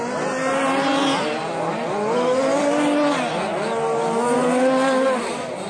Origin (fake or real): real